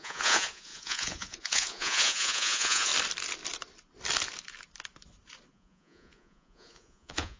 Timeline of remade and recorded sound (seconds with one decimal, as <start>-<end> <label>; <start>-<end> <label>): 0.0-2.9 remade; 2.9-5.5 recorded; 5.5-7.4 remade